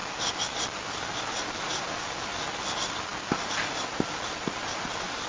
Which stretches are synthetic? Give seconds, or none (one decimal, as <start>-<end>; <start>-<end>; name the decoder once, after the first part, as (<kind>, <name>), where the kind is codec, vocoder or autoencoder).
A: none